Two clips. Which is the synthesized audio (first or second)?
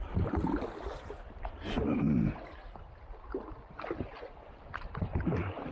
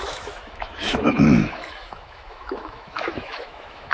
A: second